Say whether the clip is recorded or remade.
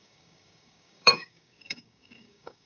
remade